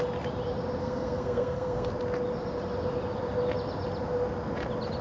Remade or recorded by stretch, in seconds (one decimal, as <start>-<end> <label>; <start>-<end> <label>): 0.0-0.8 recorded; 0.8-1.9 remade; 1.9-5.0 recorded